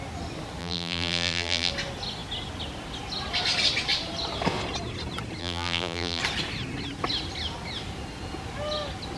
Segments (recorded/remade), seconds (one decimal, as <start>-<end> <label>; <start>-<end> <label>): 0.0-0.6 recorded; 0.6-1.7 remade; 1.7-5.4 recorded; 5.4-6.2 remade; 6.2-9.2 recorded